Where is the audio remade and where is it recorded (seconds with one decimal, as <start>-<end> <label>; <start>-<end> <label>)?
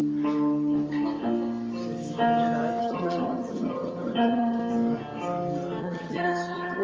0.0-2.8 recorded; 2.8-4.6 remade; 4.6-5.8 recorded; 5.8-6.8 remade